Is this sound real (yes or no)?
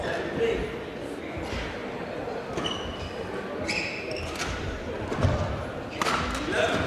yes